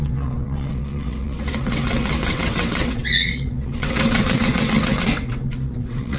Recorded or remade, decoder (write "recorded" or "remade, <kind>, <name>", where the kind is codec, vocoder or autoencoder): remade, vocoder, WaveNeXt